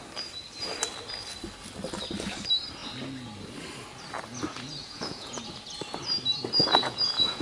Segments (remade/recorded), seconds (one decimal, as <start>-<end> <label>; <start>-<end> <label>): 0.0-4.8 recorded; 4.8-5.4 remade; 5.4-6.6 recorded; 6.6-7.4 remade